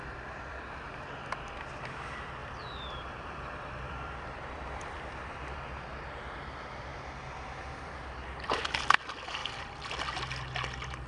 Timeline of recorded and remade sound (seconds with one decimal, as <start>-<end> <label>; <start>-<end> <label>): 0.0-1.1 remade; 1.1-2.4 recorded; 2.4-5.2 remade; 5.2-9.4 recorded; 9.4-9.9 remade; 9.9-11.1 recorded